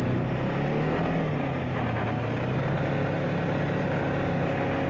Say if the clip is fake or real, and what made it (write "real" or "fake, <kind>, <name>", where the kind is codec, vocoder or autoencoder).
real